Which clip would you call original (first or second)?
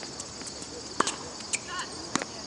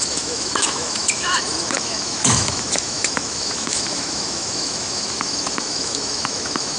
first